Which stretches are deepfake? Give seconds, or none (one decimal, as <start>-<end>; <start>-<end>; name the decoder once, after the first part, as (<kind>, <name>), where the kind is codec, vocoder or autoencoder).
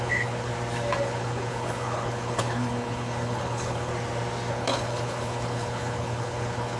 0.0-0.5 (codec, HILCodec); 1.0-3.9; 4.5-6.8